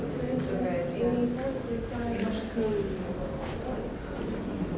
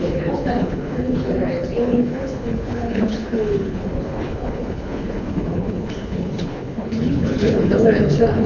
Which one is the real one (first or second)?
first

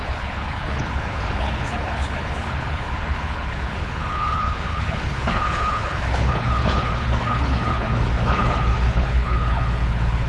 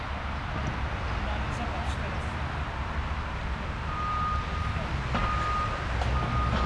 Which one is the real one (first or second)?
second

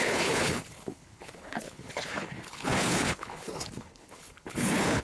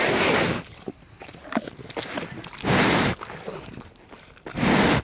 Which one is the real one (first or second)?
second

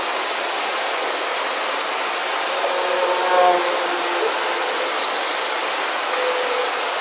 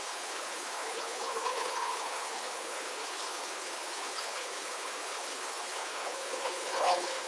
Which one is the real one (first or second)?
first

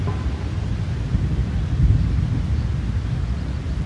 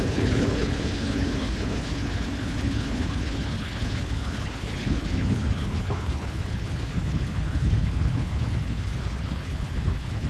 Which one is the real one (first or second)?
first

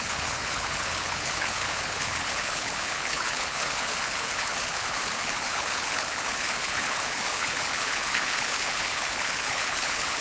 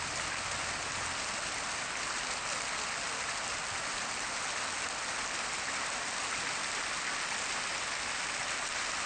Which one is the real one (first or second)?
second